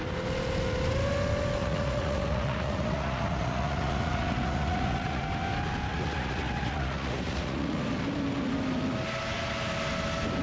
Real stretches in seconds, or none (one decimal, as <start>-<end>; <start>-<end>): 0.0-1.6; 5.2-5.9; 7.8-10.4

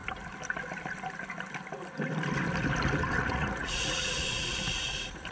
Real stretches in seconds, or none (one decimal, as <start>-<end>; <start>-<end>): 0.0-3.2

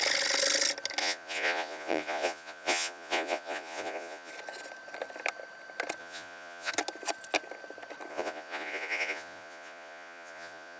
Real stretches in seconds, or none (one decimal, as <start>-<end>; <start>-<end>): 0.0-1.0; 4.3-6.0; 6.7-8.1

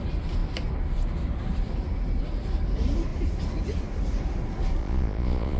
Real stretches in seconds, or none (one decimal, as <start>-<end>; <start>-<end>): 0.0-4.8

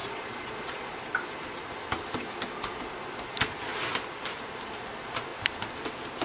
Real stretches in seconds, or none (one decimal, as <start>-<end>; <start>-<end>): 0.9-6.2

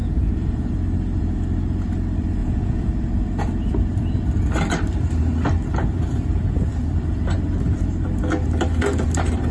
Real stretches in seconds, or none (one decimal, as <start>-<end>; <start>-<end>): 0.7-2.4; 2.9-9.5

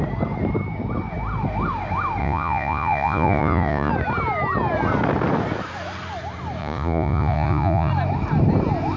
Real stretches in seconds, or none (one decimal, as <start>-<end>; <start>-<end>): 0.0-2.2; 3.9-6.6; 7.9-9.0

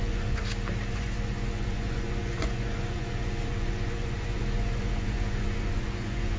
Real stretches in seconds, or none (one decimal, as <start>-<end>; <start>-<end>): 0.4-0.9